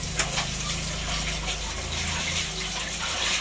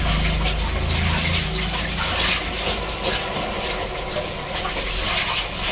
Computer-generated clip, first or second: first